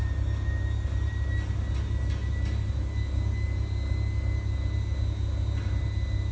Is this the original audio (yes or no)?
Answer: yes